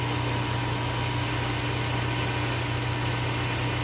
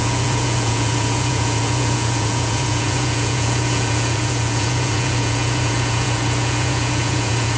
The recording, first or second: first